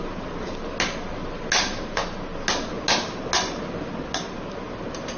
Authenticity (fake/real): real